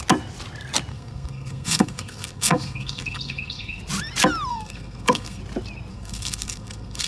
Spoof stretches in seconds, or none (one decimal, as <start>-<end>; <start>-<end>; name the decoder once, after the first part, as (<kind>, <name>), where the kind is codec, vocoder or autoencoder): 0.9-3.8 (codec, SNAC); 4.5-5.4; 5.9-7.1